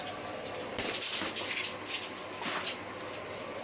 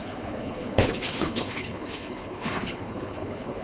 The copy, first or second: second